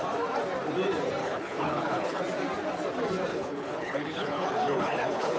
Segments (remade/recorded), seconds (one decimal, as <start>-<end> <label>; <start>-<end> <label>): 0.0-1.2 recorded; 1.2-2.2 remade; 2.2-3.3 recorded; 3.3-5.4 remade